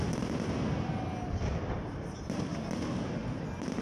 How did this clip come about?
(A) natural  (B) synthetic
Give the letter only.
A